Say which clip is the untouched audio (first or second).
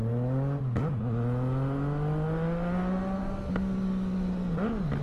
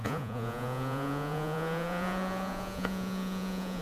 first